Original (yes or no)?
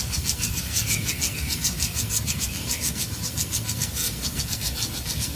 no